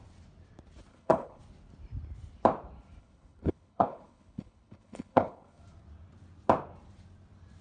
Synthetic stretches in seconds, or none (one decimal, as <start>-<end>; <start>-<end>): 0.9-1.4; 3.0-5.6

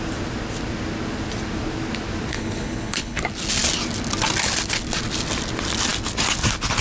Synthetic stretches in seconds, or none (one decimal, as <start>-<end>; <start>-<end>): 2.3-3.2

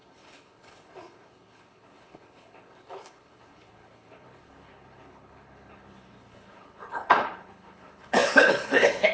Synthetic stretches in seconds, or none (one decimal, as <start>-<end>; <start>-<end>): 0.0-9.1

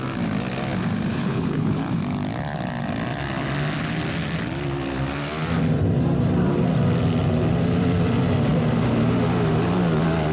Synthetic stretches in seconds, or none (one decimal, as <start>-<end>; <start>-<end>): 1.1-1.8

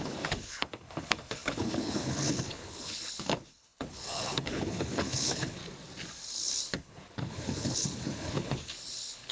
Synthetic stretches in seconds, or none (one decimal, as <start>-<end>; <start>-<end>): 0.0-5.6; 6.2-9.3

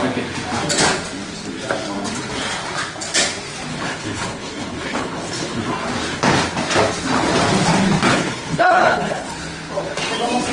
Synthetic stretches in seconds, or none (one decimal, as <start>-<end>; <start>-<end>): 3.7-5.6; 8.1-9.4

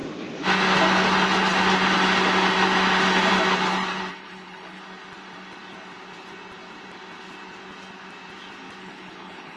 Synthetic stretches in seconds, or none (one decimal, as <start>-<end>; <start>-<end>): 4.1-4.8; 8.8-9.6

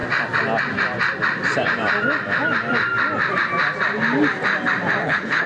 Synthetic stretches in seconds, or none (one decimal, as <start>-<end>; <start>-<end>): 5.0-5.5